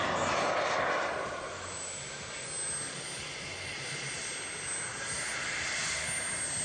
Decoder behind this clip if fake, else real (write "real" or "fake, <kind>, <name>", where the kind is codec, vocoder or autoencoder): real